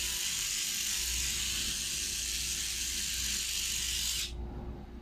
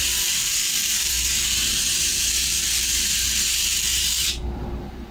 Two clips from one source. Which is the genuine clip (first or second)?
first